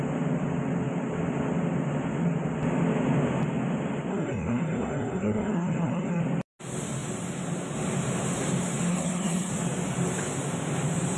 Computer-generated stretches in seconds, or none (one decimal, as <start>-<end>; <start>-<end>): 4.1-6.2; 8.9-9.5